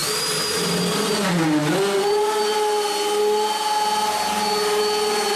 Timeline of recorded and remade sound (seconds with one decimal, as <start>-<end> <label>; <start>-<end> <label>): 0.0-5.4 recorded

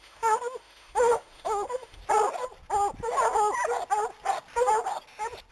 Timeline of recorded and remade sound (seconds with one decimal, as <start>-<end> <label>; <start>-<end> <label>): 0.0-2.0 remade; 2.0-5.5 recorded

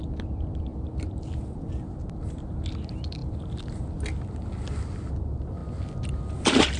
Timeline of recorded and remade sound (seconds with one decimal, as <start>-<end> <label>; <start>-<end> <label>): 0.0-6.8 recorded

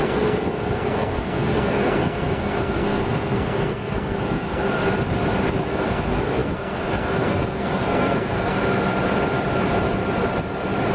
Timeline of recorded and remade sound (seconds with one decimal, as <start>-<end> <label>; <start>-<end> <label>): 0.0-4.8 remade; 4.8-5.7 recorded; 5.7-8.6 remade; 8.6-10.9 recorded

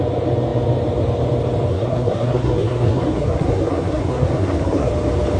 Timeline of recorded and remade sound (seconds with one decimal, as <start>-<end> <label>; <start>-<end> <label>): 0.0-1.7 recorded; 1.7-4.9 remade; 4.9-5.4 recorded

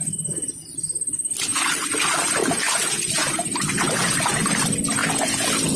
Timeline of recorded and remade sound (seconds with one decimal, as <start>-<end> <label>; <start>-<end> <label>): 0.0-1.5 recorded; 1.5-2.0 remade; 2.0-2.4 recorded; 2.4-4.6 remade; 4.6-5.0 recorded; 5.0-5.8 remade